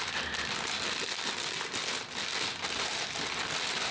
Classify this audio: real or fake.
real